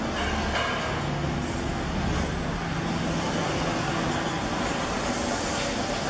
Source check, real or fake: real